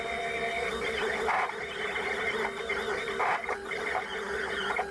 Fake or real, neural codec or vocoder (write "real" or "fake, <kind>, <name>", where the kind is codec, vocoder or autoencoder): real